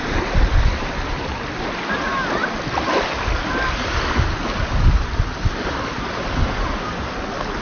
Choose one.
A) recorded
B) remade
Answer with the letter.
A